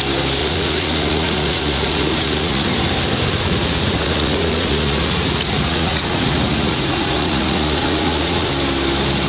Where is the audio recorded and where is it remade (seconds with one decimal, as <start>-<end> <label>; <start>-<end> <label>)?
0.0-0.4 recorded; 0.4-2.8 remade; 2.8-3.3 recorded; 3.3-8.5 remade; 8.5-9.3 recorded